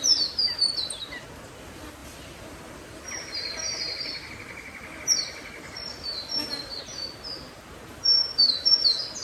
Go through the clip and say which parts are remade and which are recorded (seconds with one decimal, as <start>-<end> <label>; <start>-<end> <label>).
0.0-2.0 recorded; 2.0-6.8 remade; 6.8-8.2 recorded; 8.2-8.7 remade; 8.7-9.2 recorded